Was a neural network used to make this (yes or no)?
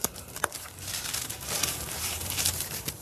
yes